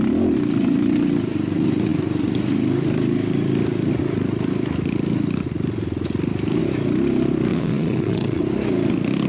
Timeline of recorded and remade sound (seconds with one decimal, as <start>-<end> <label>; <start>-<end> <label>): 0.0-7.5 recorded; 7.5-8.4 remade; 8.4-9.3 recorded